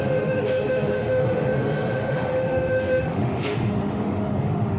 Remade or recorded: remade